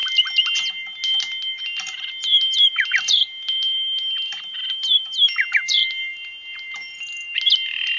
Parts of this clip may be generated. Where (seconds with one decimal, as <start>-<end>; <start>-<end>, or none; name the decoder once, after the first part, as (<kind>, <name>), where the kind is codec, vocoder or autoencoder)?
2.3-7.1 (vocoder, BigVGAN v2)